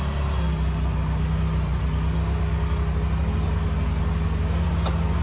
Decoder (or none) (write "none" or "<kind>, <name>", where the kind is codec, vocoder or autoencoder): none